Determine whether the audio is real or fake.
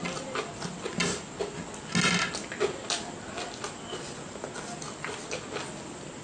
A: real